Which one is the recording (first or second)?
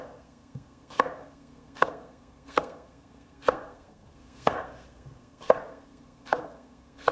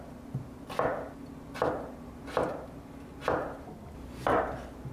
second